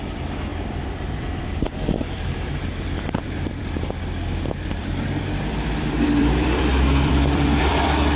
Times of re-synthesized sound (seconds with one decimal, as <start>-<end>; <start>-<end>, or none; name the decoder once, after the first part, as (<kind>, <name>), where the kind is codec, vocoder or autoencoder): 0.0-8.2 (vocoder, BigVGAN v2)